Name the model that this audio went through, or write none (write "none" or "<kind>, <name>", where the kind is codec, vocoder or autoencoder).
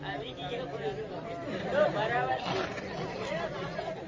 none